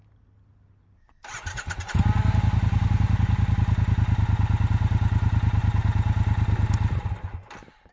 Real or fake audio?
real